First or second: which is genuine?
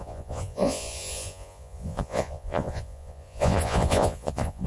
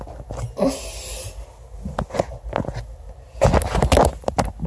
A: second